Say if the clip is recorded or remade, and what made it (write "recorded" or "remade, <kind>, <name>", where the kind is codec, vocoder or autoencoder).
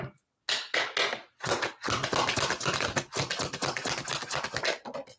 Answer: recorded